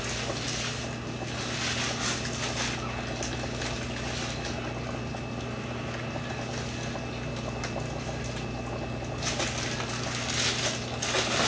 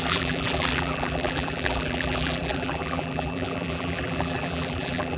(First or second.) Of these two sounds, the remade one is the second